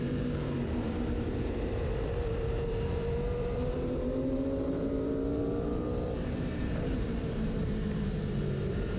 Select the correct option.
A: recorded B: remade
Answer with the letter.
B